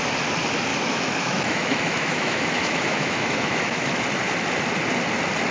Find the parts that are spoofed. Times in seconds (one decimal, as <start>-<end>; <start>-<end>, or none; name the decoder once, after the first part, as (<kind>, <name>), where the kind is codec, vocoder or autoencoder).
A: 0.7-4.0 (autoencoder, DAC-VAE)